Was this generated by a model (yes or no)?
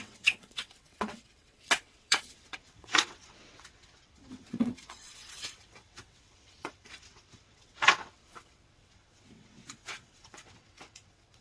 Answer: yes